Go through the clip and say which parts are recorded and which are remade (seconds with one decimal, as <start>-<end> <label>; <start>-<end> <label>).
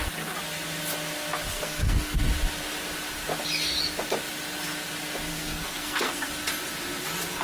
0.0-1.5 recorded; 1.5-2.3 remade; 2.3-5.3 recorded; 5.3-6.3 remade; 6.3-7.4 recorded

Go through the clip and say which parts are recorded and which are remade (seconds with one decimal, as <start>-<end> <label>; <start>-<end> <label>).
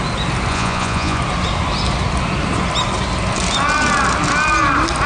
0.0-0.5 recorded; 0.5-1.2 remade; 1.2-5.1 recorded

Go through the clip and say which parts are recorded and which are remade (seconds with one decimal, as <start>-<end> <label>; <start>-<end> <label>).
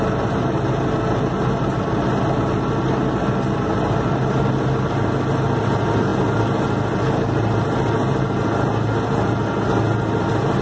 0.0-10.6 recorded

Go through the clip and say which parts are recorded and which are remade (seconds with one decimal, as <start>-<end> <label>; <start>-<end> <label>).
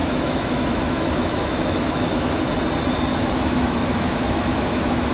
0.0-2.4 remade; 2.4-3.1 recorded; 3.1-5.1 remade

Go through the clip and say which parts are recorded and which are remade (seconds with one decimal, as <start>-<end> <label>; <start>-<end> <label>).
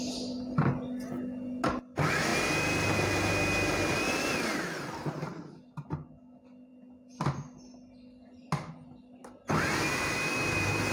0.0-10.9 recorded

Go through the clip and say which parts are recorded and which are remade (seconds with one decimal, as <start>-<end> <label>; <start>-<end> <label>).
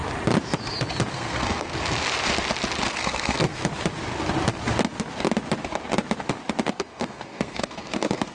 0.0-1.1 recorded; 1.1-1.7 remade; 1.7-2.9 recorded; 2.9-3.6 remade; 3.6-6.7 recorded; 6.7-8.3 remade